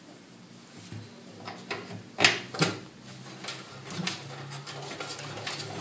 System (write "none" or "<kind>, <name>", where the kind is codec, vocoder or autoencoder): none